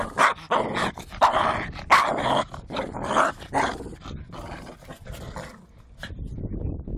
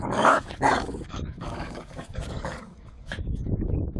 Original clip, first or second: first